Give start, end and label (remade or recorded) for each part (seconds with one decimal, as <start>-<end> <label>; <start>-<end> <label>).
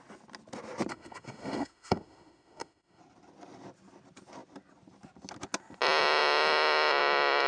0.0-0.9 recorded; 0.9-3.0 remade; 3.0-7.5 recorded